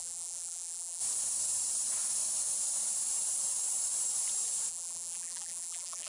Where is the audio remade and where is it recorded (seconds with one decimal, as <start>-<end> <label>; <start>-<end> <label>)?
0.0-1.0 remade; 1.0-4.7 recorded; 4.7-6.1 remade